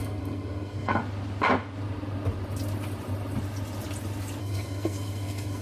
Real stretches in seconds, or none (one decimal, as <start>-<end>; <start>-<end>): 1.0-4.4